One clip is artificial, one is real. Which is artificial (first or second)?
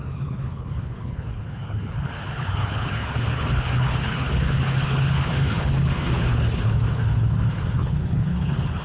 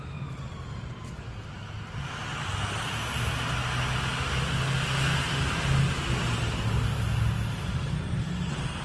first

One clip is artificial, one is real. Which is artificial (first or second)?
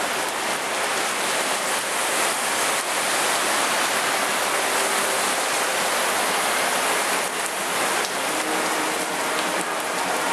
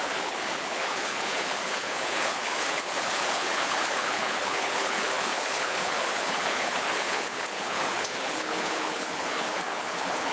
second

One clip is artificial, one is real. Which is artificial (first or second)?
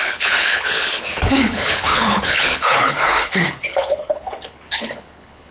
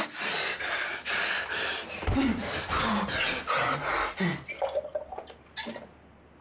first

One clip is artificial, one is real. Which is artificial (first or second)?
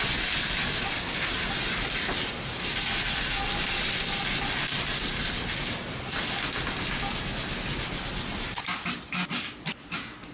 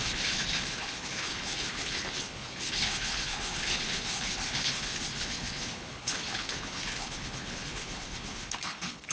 second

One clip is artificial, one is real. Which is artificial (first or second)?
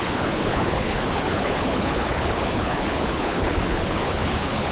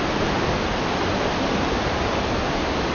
first